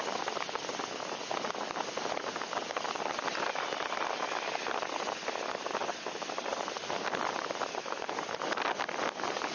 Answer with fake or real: real